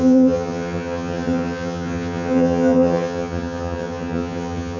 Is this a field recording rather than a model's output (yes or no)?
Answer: no